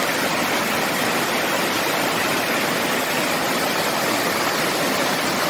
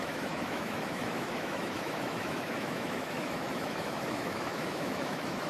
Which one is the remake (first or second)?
second